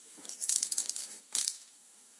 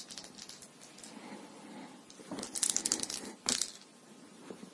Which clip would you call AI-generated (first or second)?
first